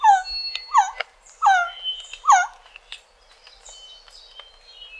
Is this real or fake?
real